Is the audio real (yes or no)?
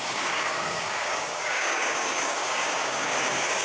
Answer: no